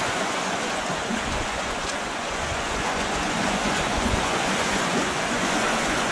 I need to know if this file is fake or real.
fake